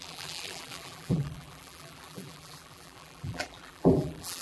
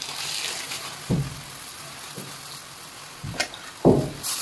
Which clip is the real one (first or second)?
second